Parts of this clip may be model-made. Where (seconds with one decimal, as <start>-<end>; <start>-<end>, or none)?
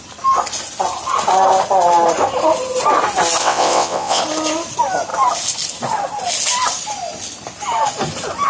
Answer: 3.4-4.2